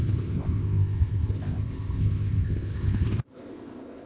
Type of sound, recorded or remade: remade